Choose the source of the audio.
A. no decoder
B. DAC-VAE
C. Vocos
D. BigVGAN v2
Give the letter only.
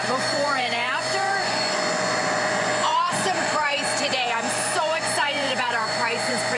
C